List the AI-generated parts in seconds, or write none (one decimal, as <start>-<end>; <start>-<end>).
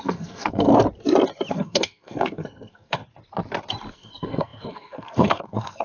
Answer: 0.0-0.7; 1.5-3.0; 3.9-5.8